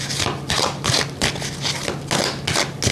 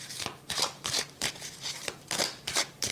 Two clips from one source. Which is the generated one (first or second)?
second